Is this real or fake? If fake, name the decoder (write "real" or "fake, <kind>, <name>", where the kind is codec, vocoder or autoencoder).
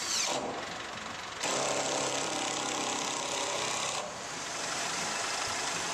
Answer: fake, vocoder, BigVGAN v2